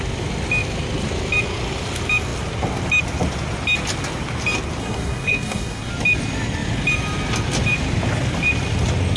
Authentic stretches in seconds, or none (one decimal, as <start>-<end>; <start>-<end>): 0.0-4.8; 5.9-9.2